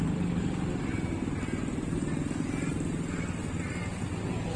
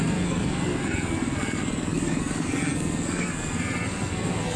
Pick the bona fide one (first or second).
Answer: first